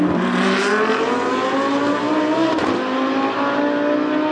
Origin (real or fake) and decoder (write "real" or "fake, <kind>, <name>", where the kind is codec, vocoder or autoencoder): real